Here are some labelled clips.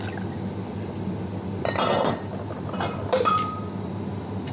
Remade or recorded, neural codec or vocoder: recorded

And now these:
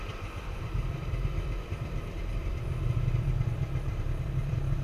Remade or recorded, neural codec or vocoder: remade, vocoder, BigVGAN v2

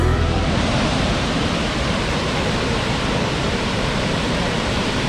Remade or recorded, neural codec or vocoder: remade, vocoder, BigVGAN v2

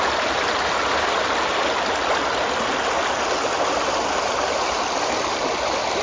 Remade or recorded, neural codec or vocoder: recorded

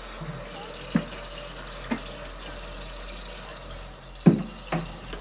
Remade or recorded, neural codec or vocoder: recorded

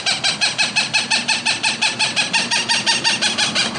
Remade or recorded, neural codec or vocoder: recorded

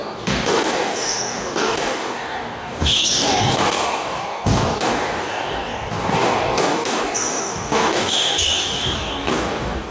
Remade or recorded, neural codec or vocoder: remade, codec, DAC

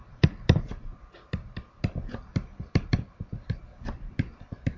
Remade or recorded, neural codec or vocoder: recorded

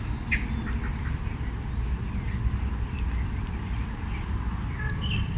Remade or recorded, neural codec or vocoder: remade, vocoder, BigVGAN v2